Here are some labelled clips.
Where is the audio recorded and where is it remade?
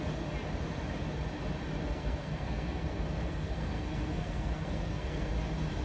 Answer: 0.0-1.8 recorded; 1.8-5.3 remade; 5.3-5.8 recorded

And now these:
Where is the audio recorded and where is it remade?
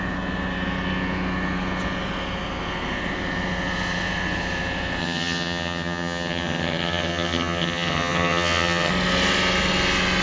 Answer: 0.0-5.0 recorded; 5.0-8.9 remade; 8.9-10.2 recorded